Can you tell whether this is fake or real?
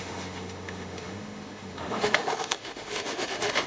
fake